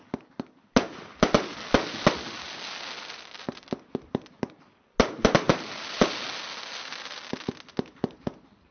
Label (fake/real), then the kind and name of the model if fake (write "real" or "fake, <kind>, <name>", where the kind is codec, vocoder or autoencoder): real